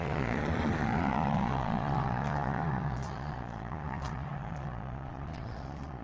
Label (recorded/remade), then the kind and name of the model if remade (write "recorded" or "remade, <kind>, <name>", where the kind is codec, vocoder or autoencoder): remade, vocoder, Vocos